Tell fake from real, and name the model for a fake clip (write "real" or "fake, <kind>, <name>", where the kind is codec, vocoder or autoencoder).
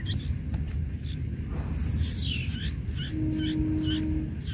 real